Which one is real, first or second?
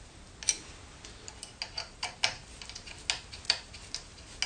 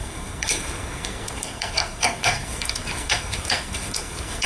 first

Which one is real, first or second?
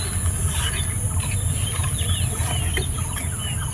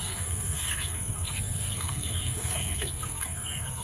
first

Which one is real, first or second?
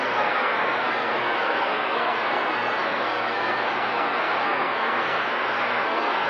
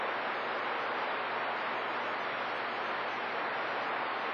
second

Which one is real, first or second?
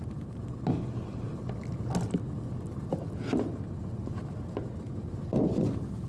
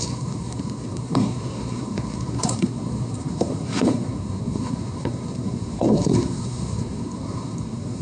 first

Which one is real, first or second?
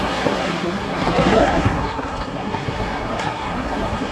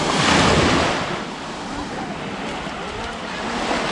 second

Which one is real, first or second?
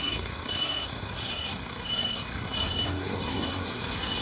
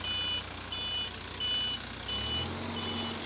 second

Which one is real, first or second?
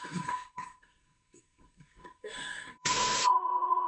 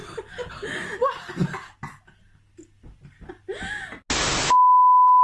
second